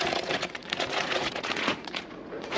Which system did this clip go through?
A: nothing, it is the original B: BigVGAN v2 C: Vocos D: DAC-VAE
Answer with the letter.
C